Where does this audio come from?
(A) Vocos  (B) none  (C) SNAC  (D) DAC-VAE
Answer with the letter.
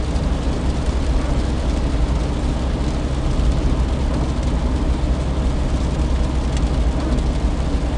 B